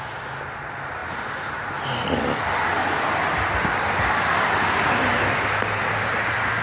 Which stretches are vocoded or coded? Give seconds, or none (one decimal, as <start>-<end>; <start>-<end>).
none

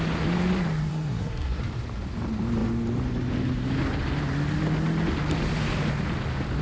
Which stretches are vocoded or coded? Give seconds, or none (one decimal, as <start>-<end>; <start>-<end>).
0.9-1.6

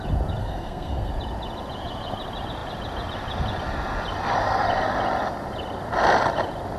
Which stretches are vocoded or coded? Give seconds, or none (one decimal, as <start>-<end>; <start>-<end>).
0.4-1.1